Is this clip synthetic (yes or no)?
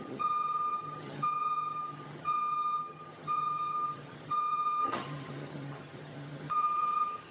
yes